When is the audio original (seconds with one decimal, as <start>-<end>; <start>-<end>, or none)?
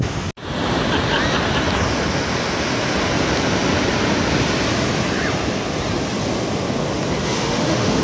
0.0-7.2